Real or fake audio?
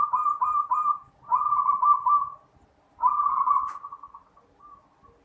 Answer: real